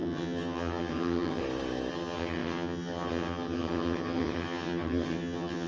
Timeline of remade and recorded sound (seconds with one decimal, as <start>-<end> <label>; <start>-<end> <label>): 0.0-1.4 remade; 1.4-1.9 recorded; 1.9-5.7 remade